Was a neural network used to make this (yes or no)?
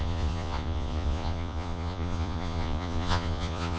yes